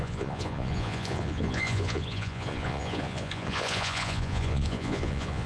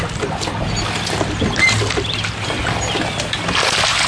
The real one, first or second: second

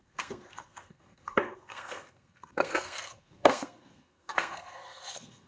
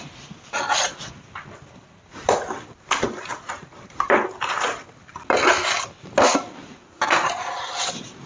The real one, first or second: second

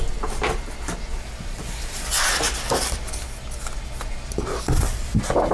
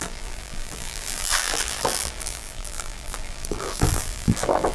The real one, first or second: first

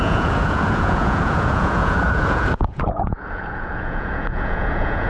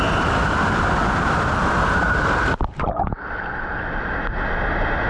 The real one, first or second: second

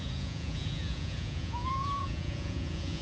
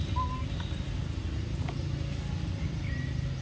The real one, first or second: second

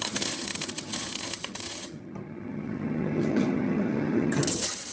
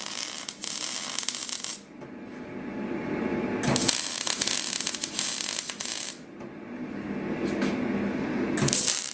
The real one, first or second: second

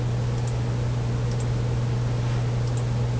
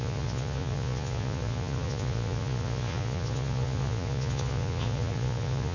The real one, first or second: first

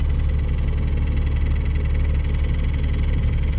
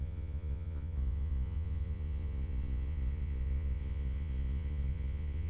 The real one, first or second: first